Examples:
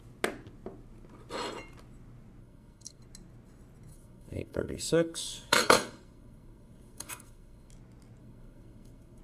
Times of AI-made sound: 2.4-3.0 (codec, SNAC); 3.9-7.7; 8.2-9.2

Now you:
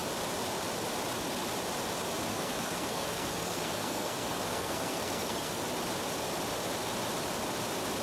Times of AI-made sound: 2.3-5.6 (codec, SNAC)

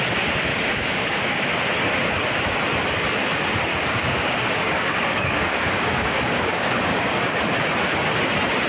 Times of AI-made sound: 0.5-1.5 (codec, DAC); 3.7-7.4

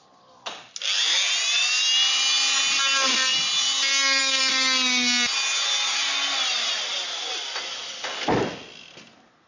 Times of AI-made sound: none

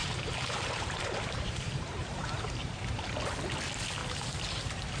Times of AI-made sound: 0.0-3.0 (vocoder, BigVGAN v2)